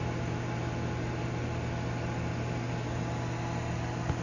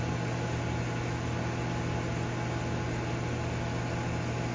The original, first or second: second